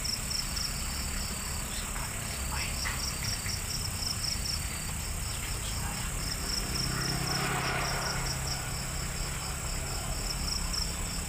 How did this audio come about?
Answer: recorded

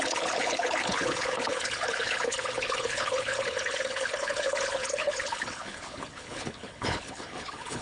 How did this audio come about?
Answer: remade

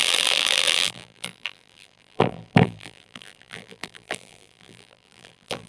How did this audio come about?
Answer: remade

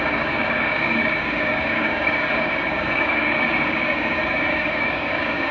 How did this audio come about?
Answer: remade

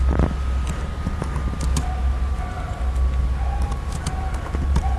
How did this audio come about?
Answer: recorded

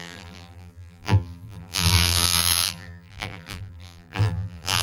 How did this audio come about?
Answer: remade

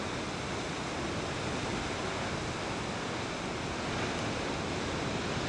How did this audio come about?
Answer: recorded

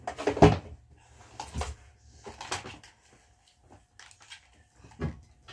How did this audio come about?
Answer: recorded